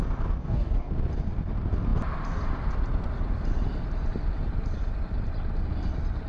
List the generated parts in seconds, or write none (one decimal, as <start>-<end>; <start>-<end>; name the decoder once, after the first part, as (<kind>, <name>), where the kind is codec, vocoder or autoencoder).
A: 0.4-0.9 (codec, DAC)